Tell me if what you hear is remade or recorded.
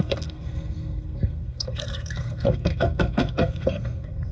remade